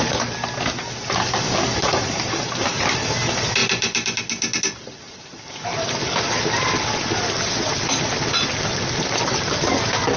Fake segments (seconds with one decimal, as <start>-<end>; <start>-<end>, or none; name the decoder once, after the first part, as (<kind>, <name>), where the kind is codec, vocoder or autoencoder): none

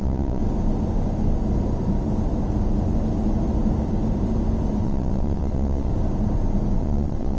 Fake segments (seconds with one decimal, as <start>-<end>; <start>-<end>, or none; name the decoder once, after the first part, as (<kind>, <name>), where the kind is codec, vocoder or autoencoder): 0.0-0.4 (vocoder, WaveNeXt); 4.8-5.9; 6.8-7.4

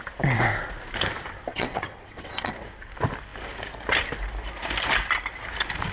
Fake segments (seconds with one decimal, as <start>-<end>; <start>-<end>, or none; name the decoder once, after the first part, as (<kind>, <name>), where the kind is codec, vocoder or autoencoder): 1.5-2.5 (vocoder, WaveNeXt)

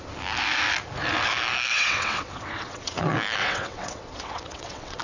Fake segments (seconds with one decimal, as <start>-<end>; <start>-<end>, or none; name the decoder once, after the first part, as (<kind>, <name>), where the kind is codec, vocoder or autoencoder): 1.7-3.0 (vocoder, WaveNeXt); 3.4-5.0

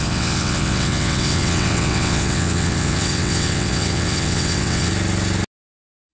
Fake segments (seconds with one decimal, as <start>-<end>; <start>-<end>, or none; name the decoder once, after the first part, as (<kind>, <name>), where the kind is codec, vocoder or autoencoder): 0.0-4.9 (vocoder, WaveNeXt)